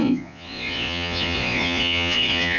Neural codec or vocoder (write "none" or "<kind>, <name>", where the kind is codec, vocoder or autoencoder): vocoder, Vocos